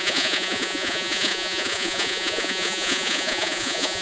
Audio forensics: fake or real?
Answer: fake